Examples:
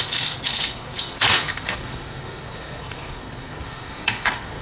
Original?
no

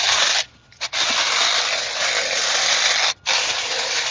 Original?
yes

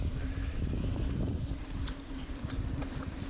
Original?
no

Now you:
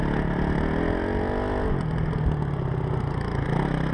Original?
yes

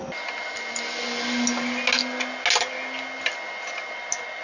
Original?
yes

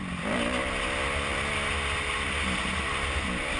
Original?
yes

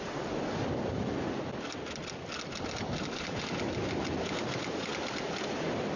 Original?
yes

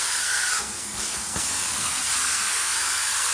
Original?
no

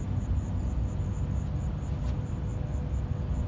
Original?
yes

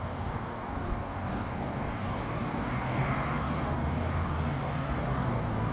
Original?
no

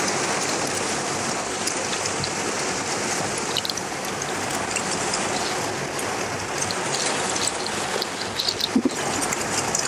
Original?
yes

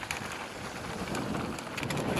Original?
yes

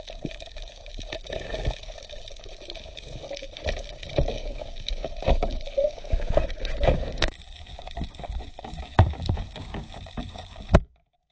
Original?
no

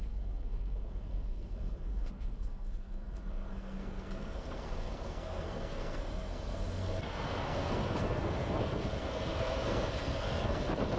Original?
no